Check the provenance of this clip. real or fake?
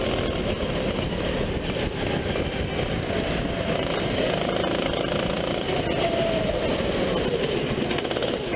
real